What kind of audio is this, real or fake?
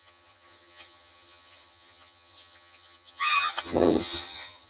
fake